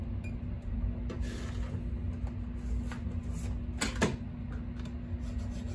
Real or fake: real